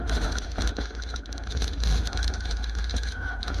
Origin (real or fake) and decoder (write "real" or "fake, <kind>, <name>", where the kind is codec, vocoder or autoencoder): fake, autoencoder, DAC-VAE